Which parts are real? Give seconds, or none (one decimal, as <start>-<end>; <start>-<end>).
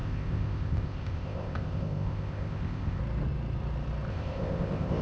3.0-4.1